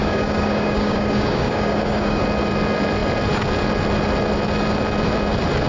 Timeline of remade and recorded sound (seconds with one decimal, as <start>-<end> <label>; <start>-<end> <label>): 0.0-2.2 remade; 2.2-5.7 recorded